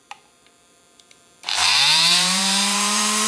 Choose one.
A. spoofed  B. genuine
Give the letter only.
A